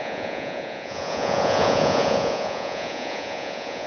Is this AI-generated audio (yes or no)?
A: yes